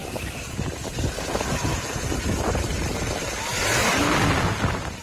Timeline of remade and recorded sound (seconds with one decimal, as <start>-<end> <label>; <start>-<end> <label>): 0.0-3.0 remade; 3.0-5.0 recorded

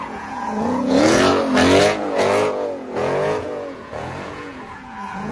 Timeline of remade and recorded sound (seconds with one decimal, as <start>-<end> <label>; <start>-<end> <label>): 0.0-1.3 remade; 1.3-1.8 recorded; 1.8-5.3 remade